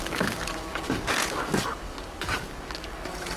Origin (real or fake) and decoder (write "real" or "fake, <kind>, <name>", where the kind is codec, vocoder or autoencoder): fake, codec, DAC